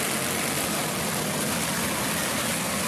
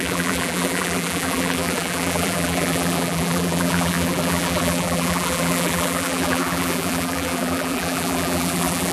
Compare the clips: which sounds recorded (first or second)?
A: first